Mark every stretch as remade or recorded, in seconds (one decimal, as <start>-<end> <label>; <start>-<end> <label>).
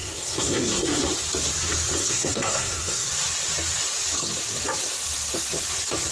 0.0-1.1 remade; 1.1-2.0 recorded; 2.0-3.1 remade; 3.1-6.1 recorded